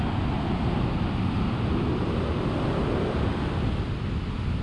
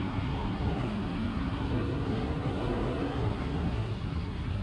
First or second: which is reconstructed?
second